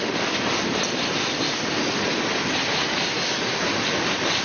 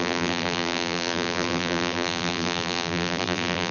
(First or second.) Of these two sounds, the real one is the first